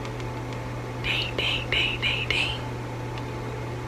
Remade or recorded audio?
recorded